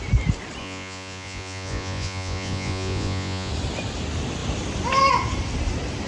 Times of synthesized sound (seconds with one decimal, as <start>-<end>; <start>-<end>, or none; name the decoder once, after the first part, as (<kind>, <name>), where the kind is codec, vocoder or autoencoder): 0.6-3.5 (vocoder, Vocos)